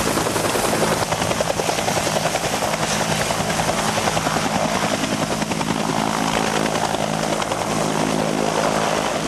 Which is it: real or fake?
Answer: real